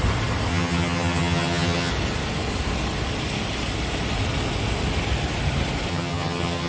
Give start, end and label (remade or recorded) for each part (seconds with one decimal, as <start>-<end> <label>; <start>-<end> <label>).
0.0-0.5 recorded; 0.5-1.9 remade; 1.9-5.9 recorded; 5.9-6.7 remade